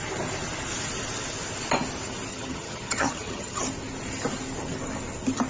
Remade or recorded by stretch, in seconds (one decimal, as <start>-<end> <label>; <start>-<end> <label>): 0.0-2.3 recorded; 2.3-3.6 remade; 3.6-5.5 recorded